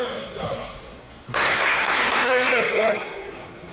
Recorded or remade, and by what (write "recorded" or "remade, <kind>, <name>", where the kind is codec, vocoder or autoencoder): remade, codec, SNAC